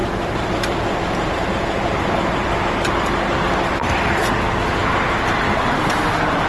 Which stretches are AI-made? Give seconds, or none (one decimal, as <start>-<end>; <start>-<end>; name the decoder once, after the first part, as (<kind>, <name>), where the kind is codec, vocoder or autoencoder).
0.0-2.8 (vocoder, BigVGAN v2)